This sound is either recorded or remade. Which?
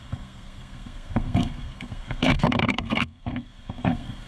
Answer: remade